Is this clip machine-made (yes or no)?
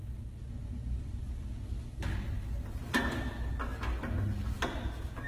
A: no